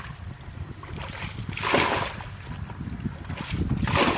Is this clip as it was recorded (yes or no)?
yes